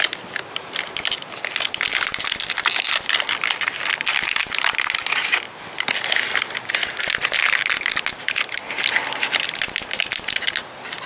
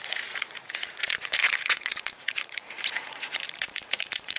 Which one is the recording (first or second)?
first